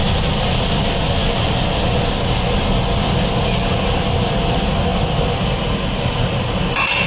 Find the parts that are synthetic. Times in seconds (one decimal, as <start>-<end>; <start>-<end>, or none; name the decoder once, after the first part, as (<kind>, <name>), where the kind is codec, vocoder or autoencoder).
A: none